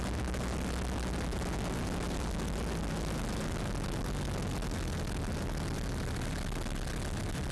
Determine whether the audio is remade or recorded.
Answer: recorded